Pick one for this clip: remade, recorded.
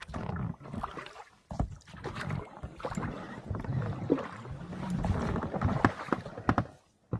recorded